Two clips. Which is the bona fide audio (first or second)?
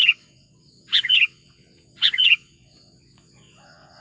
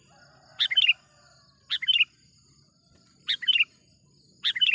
second